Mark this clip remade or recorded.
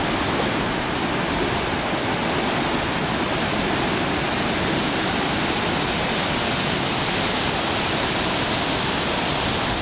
recorded